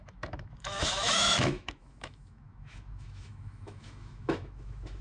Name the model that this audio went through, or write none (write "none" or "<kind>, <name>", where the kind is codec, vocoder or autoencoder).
autoencoder, DAC-VAE